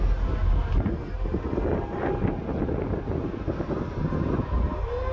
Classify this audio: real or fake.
real